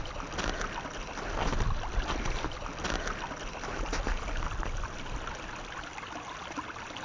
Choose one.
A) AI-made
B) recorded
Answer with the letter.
B